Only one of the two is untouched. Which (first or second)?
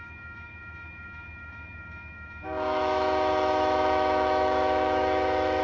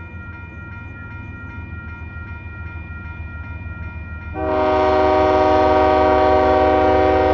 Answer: second